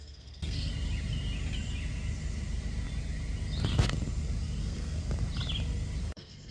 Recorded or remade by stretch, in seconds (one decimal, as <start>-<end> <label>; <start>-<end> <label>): 0.0-0.7 remade; 0.7-4.6 recorded; 4.6-5.0 remade; 5.0-6.0 recorded; 6.0-6.5 remade